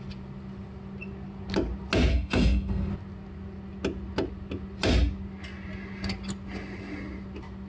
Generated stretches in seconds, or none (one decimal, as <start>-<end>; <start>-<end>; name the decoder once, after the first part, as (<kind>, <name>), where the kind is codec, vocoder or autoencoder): 2.1-2.9 (codec, SNAC)